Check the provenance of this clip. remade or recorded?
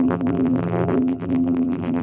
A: remade